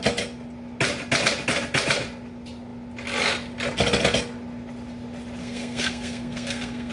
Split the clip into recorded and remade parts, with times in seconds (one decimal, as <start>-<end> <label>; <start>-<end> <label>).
0.0-5.4 recorded; 5.4-6.9 remade